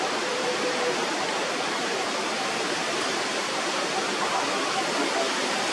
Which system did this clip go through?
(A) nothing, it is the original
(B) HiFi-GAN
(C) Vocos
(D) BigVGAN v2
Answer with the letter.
D